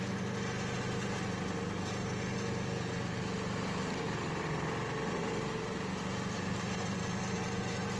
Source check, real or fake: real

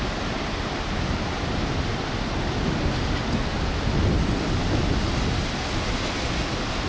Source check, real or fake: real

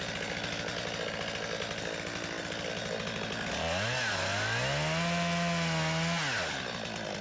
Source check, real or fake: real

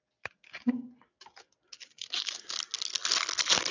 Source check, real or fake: real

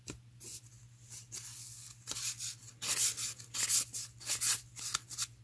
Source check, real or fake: real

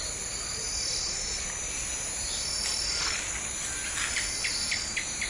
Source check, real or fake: real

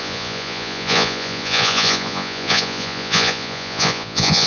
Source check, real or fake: fake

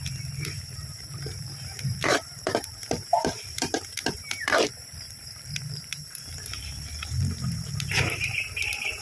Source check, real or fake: fake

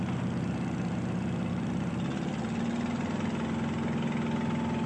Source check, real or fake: real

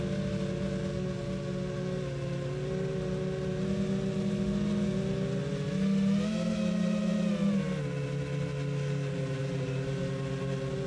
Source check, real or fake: real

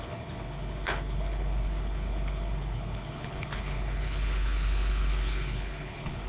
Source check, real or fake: fake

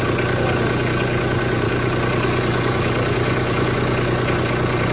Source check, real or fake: fake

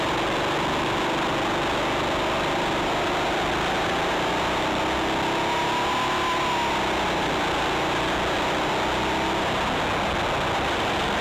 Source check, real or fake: real